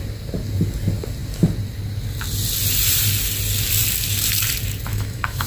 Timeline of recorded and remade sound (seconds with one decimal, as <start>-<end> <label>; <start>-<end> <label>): 0.0-4.9 recorded; 4.9-5.5 remade